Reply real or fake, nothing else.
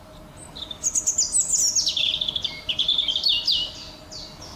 real